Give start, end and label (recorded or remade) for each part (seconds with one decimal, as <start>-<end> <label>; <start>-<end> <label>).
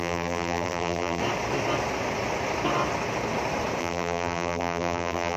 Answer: 0.0-1.2 remade; 1.2-3.8 recorded; 3.8-5.4 remade